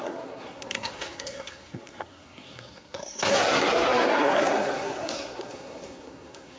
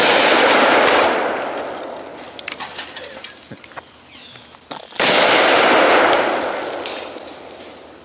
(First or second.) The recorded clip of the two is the second